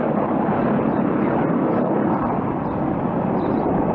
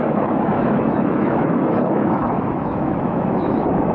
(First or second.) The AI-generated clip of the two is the second